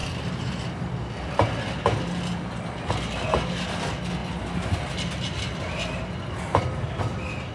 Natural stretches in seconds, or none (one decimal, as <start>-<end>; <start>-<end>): 0.0-7.5